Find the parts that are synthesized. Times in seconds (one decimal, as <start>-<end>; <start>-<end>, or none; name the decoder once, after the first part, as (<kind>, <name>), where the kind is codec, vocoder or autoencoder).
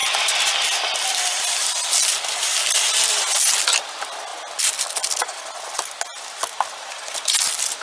none